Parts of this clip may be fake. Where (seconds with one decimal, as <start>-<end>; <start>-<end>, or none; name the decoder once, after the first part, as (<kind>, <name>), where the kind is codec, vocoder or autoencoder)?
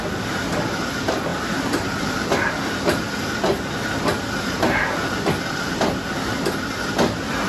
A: 1.3-2.5 (vocoder, BigVGAN v2)